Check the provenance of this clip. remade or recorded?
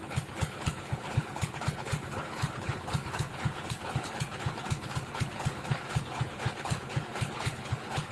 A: remade